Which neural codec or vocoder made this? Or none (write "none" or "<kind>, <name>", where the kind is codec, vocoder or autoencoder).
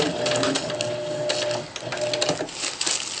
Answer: none